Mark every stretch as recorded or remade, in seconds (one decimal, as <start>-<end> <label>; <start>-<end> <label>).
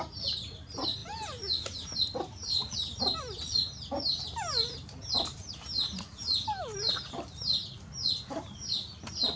0.0-9.4 recorded